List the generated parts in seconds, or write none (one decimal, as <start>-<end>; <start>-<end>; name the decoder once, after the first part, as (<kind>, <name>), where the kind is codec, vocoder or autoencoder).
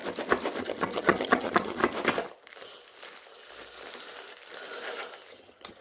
0.6-1.8 (vocoder, HiFi-GAN); 5.3-5.8